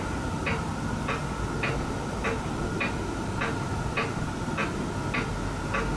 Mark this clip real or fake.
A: real